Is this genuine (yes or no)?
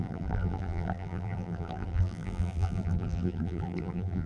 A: no